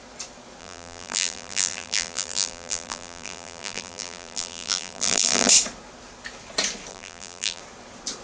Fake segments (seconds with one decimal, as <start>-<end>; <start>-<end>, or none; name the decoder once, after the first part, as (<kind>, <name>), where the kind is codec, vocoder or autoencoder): 0.6-5.5 (vocoder, BigVGAN v2); 6.9-7.6